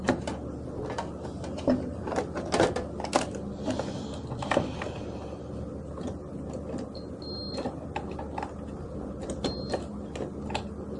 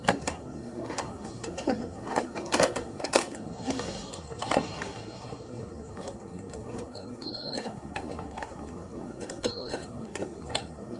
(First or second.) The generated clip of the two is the second